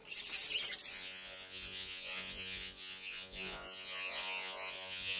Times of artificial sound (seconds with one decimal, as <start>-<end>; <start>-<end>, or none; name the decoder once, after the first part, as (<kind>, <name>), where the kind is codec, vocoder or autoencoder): 0.9-5.2 (vocoder, Vocos)